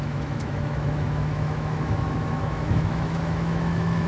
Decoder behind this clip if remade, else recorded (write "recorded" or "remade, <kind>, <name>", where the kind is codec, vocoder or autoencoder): remade, autoencoder, DAC-VAE